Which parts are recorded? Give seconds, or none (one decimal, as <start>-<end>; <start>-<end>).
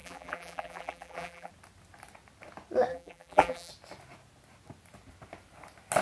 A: 1.5-2.9; 3.7-6.0